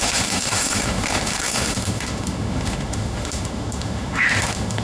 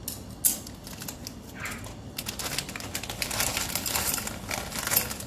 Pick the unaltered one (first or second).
second